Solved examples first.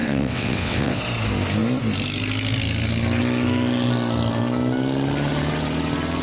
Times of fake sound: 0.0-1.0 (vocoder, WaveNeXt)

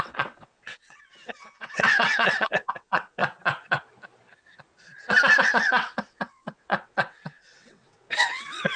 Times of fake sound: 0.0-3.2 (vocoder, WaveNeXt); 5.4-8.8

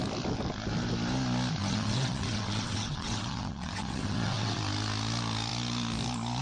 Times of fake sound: 1.6-4.6 (vocoder, WaveNeXt)

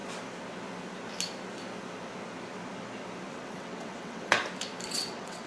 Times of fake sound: 3.3-4.4 (vocoder, WaveNeXt); 4.9-5.5

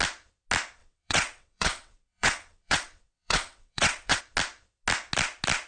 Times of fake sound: 0.8-4.2 (vocoder, WaveNeXt)

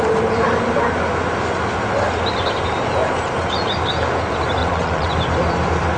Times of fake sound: 4.6-5.1 (vocoder, WaveNeXt)